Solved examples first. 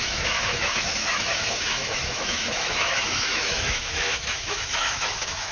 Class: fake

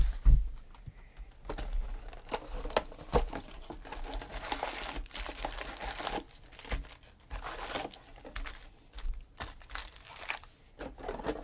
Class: real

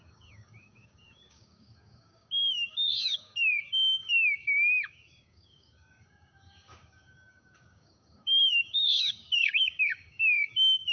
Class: fake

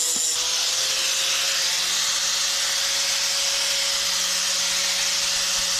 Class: real